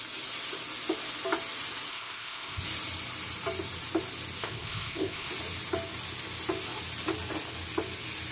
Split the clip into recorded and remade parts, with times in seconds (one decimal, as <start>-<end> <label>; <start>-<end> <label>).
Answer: 0.0-1.9 recorded; 1.9-2.6 remade; 2.6-4.4 recorded; 4.4-5.3 remade; 5.3-8.3 recorded